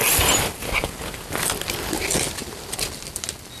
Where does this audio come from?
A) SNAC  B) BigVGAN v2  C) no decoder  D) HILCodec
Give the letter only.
C